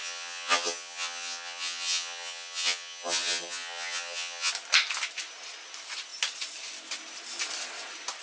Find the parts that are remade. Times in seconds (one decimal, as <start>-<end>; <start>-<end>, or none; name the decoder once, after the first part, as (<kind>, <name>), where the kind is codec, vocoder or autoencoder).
0.0-4.5 (vocoder, HiFi-GAN)